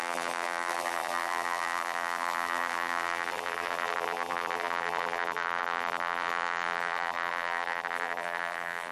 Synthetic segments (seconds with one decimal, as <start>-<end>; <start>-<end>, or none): 0.0-8.9